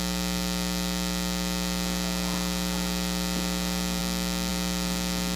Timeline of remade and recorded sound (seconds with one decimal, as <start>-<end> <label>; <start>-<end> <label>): 0.0-5.4 recorded